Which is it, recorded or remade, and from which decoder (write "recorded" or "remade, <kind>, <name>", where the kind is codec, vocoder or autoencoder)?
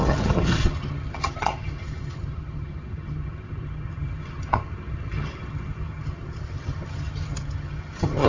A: remade, vocoder, HiFi-GAN